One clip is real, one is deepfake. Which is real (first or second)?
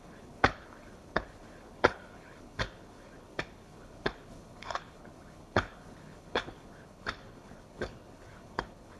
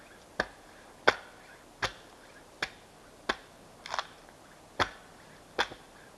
second